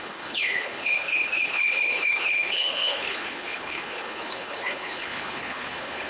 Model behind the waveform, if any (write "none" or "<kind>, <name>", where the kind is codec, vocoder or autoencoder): codec, HILCodec